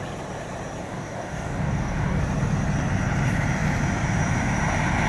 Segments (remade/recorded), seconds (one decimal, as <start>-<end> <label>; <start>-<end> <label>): 0.0-0.8 recorded; 0.8-2.2 remade; 2.2-5.1 recorded